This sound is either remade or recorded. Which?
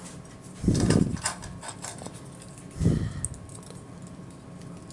recorded